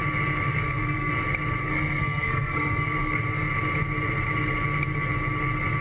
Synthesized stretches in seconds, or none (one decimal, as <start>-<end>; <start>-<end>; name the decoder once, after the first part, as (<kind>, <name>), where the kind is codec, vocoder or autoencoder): 0.5-1.1 (codec, SNAC); 1.6-3.2